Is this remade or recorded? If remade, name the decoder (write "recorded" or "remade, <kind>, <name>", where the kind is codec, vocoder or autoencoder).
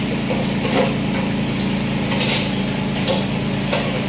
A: recorded